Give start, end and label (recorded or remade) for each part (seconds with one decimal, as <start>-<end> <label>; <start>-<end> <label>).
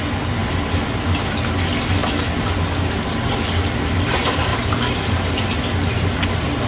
0.0-0.4 recorded; 0.4-0.9 remade; 0.9-4.5 recorded; 4.5-5.4 remade; 5.4-6.7 recorded